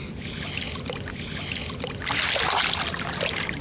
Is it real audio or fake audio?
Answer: real